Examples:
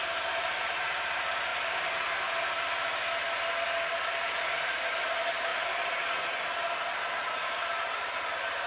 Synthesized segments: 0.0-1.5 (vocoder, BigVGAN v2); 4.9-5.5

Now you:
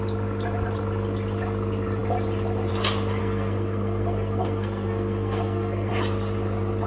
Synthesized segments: 3.2-5.9 (codec, SNAC)